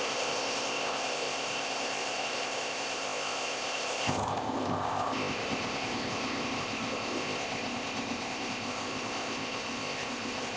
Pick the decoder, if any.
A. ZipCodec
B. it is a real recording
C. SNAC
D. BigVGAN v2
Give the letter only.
A